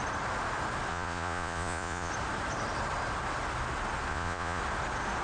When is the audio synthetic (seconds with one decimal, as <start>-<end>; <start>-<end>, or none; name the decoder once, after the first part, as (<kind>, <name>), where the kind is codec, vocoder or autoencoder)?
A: 0.9-2.1 (vocoder, Vocos); 4.1-4.6